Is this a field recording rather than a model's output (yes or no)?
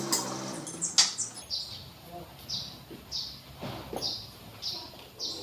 yes